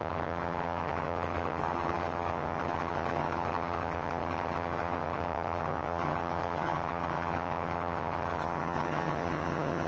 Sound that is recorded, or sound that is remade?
remade